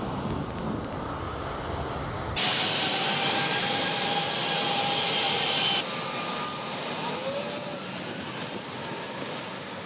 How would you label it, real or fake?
real